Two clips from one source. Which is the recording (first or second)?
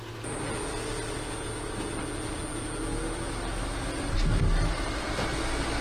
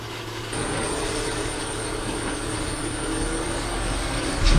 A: first